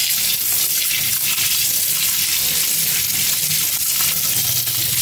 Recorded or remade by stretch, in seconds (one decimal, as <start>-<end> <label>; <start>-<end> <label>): 0.0-5.0 recorded